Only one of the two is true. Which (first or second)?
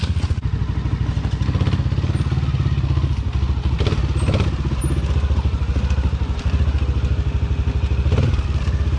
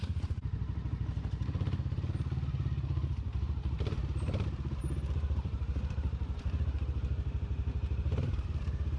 first